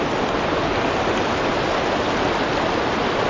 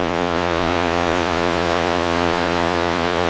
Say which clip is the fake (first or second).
second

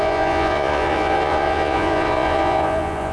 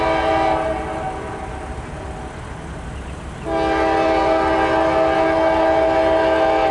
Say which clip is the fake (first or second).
first